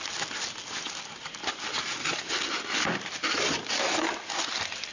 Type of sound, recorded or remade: recorded